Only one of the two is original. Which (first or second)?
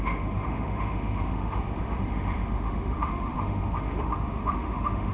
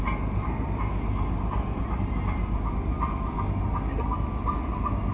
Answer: second